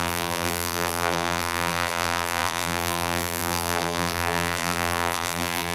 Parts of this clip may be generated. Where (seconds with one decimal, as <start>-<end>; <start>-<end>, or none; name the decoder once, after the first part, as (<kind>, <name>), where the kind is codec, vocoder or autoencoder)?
0.0-5.7 (vocoder, BigVGAN v2)